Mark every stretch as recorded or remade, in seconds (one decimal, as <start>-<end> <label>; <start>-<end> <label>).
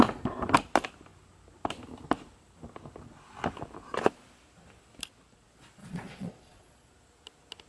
0.0-5.8 recorded; 5.8-6.9 remade; 6.9-7.7 recorded